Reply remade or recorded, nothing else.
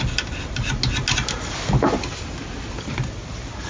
recorded